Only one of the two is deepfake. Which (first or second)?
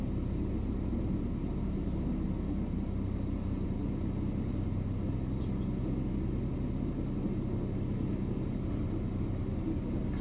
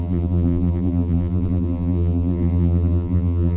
second